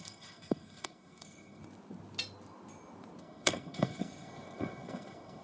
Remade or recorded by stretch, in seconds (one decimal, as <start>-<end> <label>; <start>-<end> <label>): 0.0-1.6 remade; 1.6-3.2 recorded; 3.2-5.4 remade